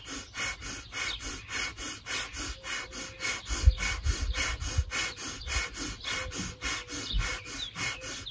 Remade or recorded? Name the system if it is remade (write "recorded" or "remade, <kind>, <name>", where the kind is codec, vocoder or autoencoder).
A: recorded